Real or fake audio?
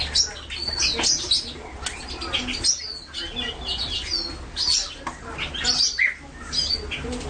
real